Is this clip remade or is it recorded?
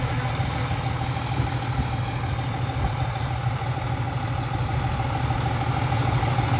recorded